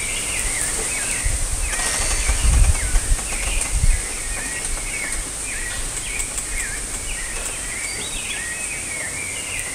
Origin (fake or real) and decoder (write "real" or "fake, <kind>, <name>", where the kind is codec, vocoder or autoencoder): real